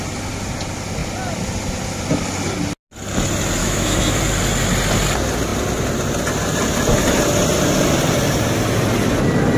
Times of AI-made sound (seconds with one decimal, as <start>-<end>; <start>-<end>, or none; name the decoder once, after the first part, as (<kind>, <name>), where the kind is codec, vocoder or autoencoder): 3.6-4.2 (autoencoder, DAC-VAE)